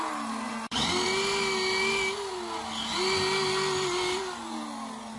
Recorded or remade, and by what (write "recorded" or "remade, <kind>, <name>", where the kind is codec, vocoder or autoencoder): recorded